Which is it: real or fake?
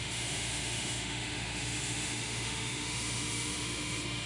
fake